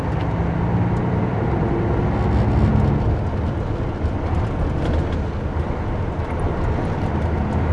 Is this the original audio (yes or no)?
yes